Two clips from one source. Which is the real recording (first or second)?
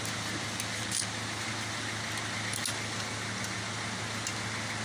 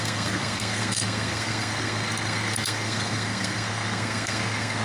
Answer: first